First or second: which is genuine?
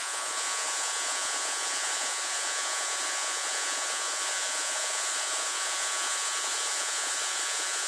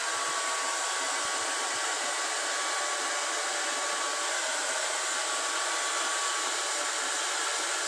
second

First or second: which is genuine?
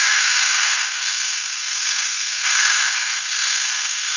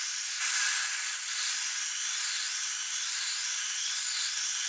second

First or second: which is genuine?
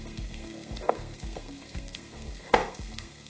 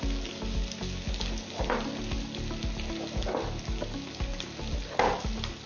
second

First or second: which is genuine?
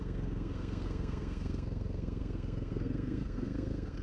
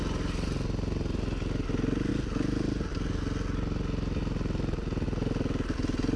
second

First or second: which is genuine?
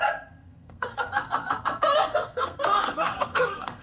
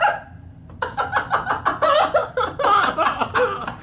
second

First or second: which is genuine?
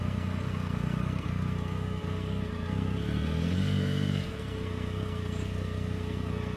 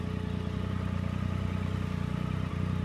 second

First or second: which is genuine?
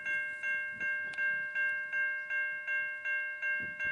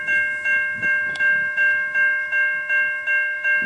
first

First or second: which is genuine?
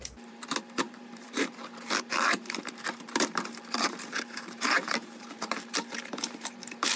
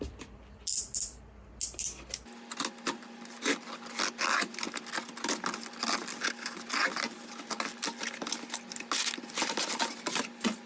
second